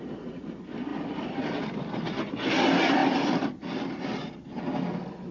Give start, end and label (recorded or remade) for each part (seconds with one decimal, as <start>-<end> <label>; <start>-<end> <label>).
0.0-0.9 recorded; 0.9-1.4 remade; 1.4-3.0 recorded; 3.0-4.4 remade; 4.4-5.3 recorded